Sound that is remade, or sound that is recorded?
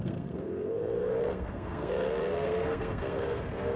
remade